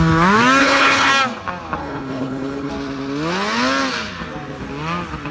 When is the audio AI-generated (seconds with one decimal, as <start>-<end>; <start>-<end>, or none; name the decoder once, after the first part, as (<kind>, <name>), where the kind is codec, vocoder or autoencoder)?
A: 0.6-1.1 (codec, HILCodec); 1.8-2.7